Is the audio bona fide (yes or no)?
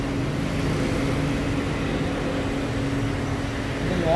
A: yes